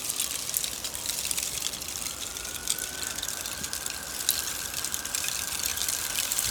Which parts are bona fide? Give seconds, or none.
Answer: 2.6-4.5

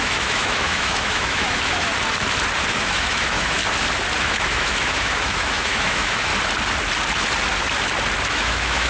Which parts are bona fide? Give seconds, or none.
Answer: 1.9-2.7; 3.6-4.2; 6.3-8.3

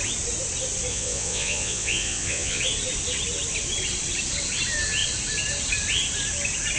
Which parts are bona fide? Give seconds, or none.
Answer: 0.0-0.9; 2.6-6.8